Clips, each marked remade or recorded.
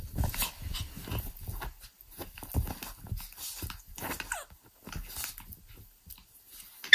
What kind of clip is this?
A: recorded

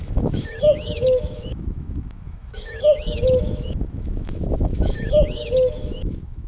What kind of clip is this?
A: remade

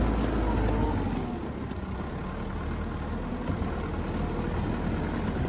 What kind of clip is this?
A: recorded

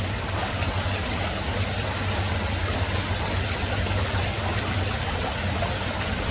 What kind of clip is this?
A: recorded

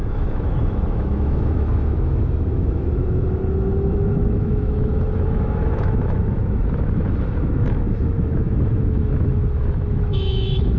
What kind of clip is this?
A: remade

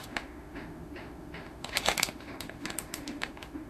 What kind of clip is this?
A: remade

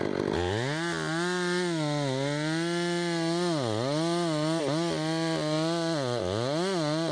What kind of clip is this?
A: recorded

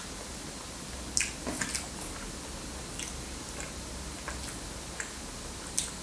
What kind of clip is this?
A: recorded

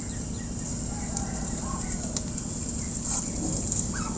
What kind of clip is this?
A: recorded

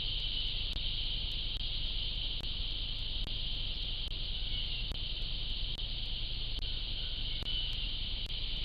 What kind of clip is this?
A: recorded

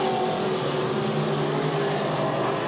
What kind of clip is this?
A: recorded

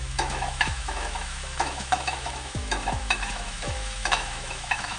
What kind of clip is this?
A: remade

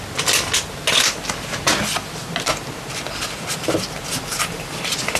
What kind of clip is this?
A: recorded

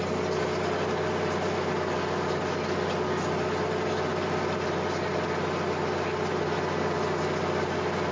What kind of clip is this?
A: recorded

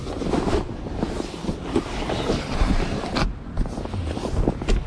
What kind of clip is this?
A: recorded